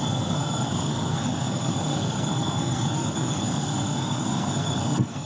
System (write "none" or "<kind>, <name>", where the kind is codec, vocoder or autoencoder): codec, SNAC